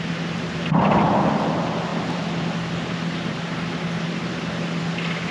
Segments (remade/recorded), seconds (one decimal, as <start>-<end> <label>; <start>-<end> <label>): 0.0-5.3 recorded